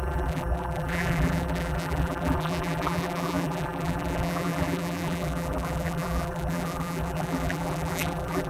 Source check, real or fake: fake